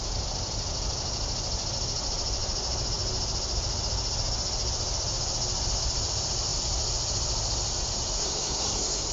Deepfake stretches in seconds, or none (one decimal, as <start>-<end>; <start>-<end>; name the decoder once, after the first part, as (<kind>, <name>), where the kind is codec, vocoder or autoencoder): 8.2-9.1 (codec, SNAC)